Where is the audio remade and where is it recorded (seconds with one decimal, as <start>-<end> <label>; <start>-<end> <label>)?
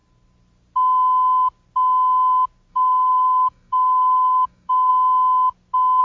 0.0-2.7 recorded; 2.7-4.9 remade; 4.9-6.0 recorded